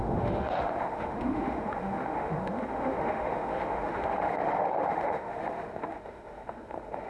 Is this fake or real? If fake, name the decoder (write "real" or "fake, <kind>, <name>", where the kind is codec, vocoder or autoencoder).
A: fake, autoencoder, DAC-VAE